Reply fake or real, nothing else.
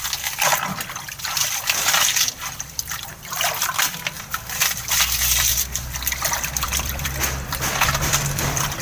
fake